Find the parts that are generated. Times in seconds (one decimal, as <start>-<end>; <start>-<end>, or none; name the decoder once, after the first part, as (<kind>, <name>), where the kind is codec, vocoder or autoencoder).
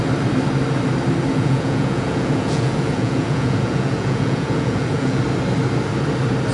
1.3-5.2 (vocoder, Vocos)